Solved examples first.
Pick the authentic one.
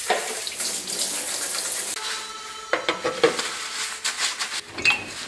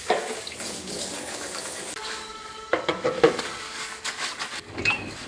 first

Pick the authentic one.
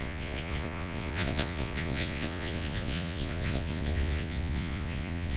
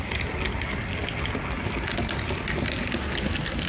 second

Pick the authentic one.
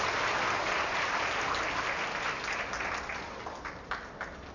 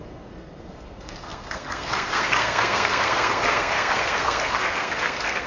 first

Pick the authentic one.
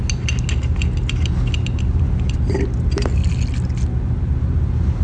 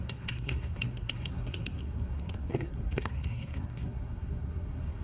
first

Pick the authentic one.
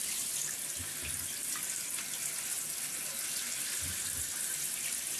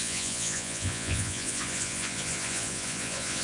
first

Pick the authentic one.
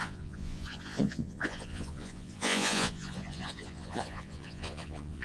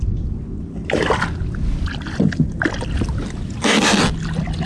second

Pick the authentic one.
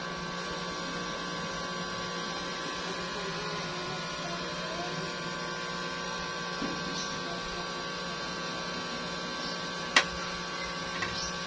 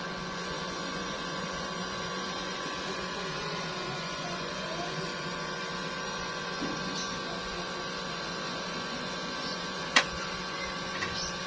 first